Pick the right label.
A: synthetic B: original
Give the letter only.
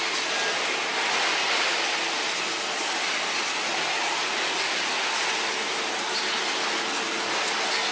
B